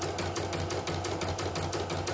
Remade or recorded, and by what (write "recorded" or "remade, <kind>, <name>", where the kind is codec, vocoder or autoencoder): recorded